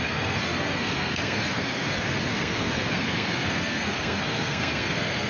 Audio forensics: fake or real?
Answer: fake